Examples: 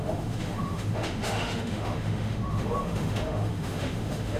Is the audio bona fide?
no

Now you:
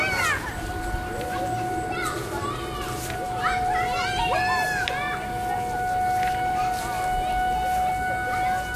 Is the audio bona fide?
yes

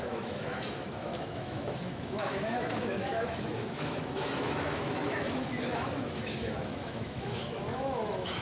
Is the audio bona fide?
no